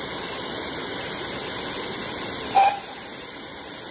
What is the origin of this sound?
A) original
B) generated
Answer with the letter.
B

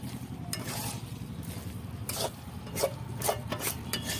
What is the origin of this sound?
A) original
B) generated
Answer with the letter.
A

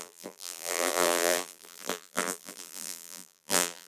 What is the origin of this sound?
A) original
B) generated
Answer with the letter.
B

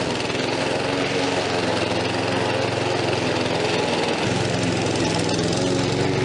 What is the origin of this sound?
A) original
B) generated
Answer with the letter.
A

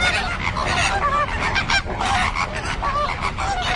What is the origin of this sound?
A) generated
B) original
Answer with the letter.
A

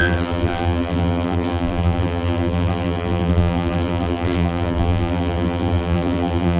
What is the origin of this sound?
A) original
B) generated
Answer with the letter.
B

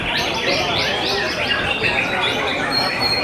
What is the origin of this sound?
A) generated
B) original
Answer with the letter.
A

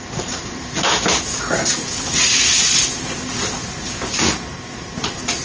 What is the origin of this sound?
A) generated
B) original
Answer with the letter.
A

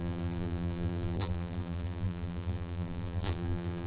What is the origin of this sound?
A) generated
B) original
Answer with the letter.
A